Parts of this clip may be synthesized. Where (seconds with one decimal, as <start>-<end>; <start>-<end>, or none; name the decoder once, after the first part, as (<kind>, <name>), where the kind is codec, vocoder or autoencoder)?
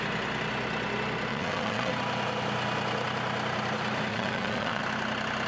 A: 1.3-1.9 (vocoder, Vocos); 4.1-4.8